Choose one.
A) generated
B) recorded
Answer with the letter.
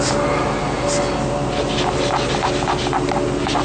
B